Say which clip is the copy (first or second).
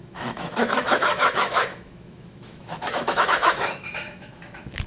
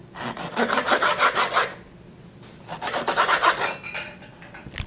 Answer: first